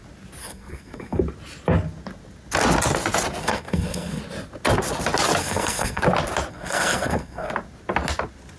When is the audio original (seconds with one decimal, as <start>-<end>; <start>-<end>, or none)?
0.0-0.4; 1.2-3.4; 4.2-5.4; 6.0-6.5; 7.5-8.6